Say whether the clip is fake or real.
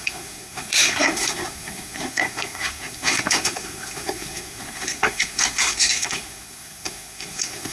fake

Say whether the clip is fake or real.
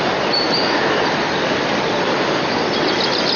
real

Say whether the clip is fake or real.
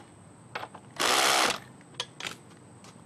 real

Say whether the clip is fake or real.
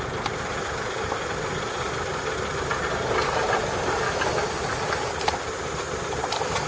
real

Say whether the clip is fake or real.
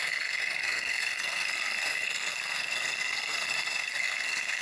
fake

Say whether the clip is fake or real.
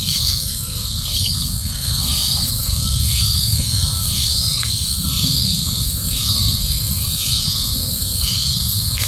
fake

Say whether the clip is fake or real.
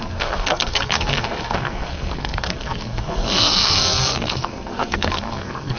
fake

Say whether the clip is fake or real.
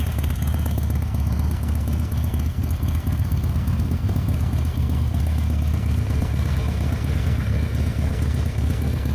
fake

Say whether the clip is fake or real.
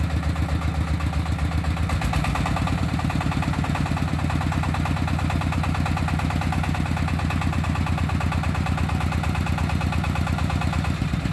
real